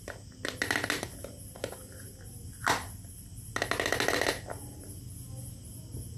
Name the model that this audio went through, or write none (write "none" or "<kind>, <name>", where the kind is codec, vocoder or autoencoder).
none